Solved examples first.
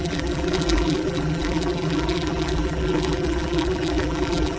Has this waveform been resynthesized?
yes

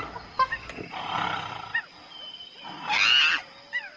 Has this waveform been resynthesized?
no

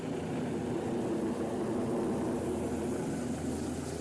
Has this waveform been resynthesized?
no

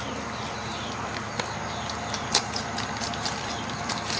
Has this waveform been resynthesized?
no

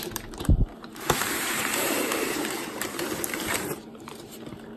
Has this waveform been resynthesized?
yes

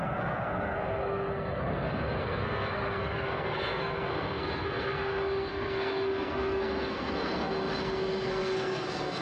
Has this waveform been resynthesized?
yes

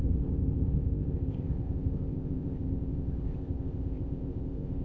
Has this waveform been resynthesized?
yes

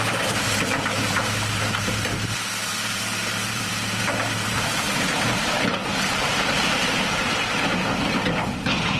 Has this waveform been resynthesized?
yes